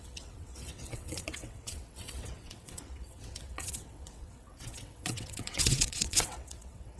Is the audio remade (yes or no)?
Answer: yes